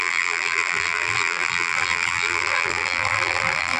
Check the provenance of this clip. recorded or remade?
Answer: remade